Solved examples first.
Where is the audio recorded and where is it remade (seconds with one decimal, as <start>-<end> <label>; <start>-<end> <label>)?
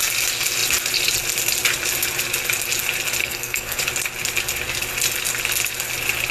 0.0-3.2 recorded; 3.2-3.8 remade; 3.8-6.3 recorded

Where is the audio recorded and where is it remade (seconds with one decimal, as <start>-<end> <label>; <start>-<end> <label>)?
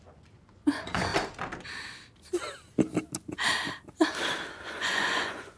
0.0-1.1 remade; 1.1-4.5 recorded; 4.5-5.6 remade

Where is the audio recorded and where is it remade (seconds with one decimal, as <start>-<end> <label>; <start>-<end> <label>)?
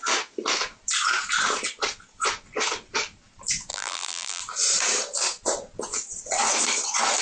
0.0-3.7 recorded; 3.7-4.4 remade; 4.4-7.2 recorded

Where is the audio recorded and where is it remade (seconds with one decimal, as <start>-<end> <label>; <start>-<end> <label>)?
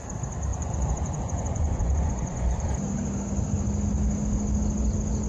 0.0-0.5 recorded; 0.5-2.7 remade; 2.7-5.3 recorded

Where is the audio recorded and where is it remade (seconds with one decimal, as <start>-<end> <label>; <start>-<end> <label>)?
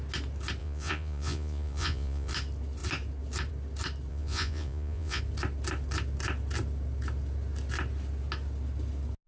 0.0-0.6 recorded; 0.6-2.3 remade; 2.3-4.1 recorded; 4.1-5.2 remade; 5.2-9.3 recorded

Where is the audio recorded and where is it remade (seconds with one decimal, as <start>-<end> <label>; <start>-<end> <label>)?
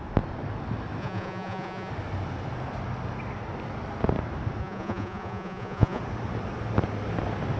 0.0-1.0 recorded; 1.0-1.9 remade; 1.9-4.6 recorded; 4.6-6.0 remade; 6.0-7.6 recorded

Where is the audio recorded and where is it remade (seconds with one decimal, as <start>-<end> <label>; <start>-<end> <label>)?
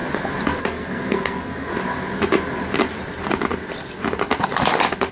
0.0-0.6 recorded; 0.6-1.7 remade; 1.7-5.1 recorded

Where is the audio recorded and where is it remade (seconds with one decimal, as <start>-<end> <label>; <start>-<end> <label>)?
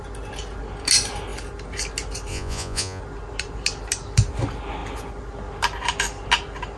0.0-2.3 recorded; 2.3-3.0 remade; 3.0-6.8 recorded